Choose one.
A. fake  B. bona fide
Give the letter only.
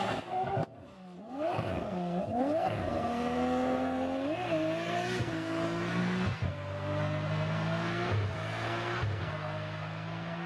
A